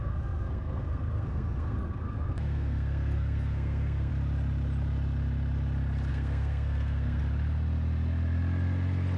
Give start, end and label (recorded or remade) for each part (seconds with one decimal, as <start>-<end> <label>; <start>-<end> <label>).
0.0-4.1 remade; 4.1-6.1 recorded; 6.1-7.2 remade; 7.2-9.2 recorded